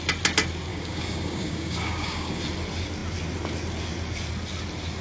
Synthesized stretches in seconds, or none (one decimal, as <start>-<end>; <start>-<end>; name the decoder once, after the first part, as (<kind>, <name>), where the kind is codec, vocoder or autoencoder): 0.7-2.4 (codec, DAC)